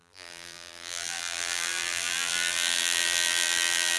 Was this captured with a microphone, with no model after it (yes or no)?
no